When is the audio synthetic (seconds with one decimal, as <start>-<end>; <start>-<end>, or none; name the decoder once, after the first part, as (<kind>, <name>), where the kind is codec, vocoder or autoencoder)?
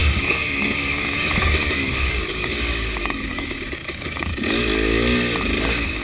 0.0-4.3 (codec, DAC); 5.6-6.0